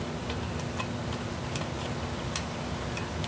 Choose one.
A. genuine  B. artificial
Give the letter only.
A